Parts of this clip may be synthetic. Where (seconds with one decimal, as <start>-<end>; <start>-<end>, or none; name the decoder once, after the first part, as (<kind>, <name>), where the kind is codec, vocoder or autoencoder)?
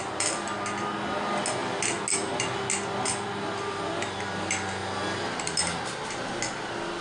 none